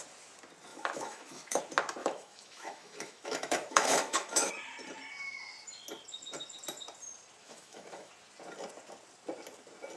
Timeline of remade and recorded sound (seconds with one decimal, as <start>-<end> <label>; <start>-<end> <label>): 0.0-0.7 recorded; 0.7-1.6 remade; 1.6-2.0 recorded; 2.0-4.5 remade; 4.5-7.4 recorded; 7.4-8.1 remade; 8.1-10.0 recorded

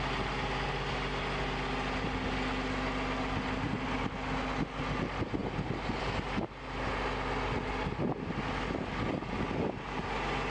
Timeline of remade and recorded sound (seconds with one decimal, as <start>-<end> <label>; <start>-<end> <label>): 0.0-10.5 recorded

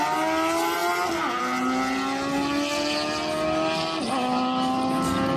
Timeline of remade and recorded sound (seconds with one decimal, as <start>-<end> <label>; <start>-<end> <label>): 0.0-5.4 recorded

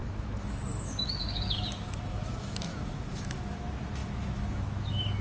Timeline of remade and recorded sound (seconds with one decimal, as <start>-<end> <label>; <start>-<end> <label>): 0.0-5.2 remade

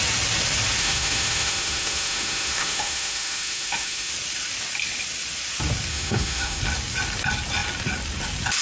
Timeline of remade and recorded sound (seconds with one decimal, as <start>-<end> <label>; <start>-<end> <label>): 0.0-0.8 recorded; 0.8-4.1 remade; 4.1-5.9 recorded; 5.9-6.6 remade; 6.6-8.6 recorded